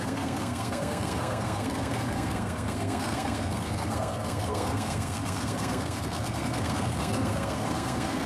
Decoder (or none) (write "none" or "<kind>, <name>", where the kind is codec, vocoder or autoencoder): codec, SNAC